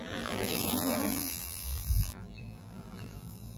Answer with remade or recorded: remade